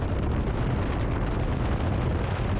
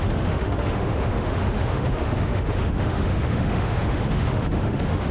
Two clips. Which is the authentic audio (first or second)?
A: first